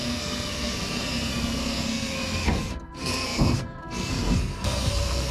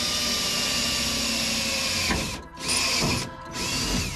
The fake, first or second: first